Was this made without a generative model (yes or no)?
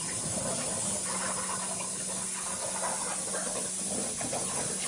yes